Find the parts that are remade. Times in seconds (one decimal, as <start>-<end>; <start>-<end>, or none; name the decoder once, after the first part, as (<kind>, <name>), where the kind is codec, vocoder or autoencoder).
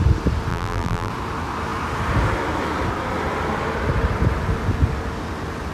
0.5-1.1 (vocoder, BigVGAN v2)